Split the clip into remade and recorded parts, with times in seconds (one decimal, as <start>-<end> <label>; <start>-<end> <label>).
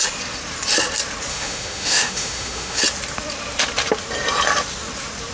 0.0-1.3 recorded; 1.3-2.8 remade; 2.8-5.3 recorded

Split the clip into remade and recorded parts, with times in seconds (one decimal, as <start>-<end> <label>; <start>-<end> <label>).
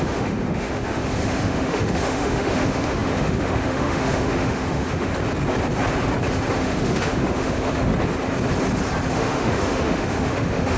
0.0-5.1 remade; 5.1-6.5 recorded; 6.5-7.9 remade; 7.9-9.1 recorded; 9.1-10.8 remade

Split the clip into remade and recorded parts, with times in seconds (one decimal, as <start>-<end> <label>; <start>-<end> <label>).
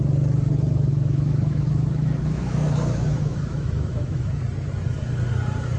0.0-0.9 recorded; 0.9-4.4 remade; 4.4-5.8 recorded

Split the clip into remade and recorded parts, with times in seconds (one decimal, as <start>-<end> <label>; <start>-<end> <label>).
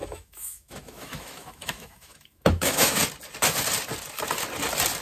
0.0-3.0 remade; 3.0-5.0 recorded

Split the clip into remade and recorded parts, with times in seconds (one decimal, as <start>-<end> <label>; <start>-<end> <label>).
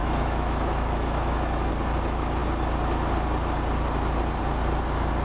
0.0-1.7 remade; 1.7-5.2 recorded